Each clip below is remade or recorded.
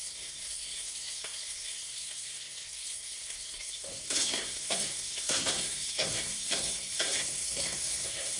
remade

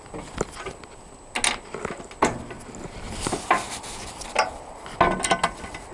recorded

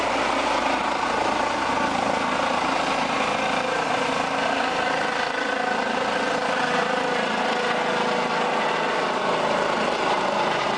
recorded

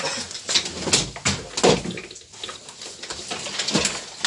recorded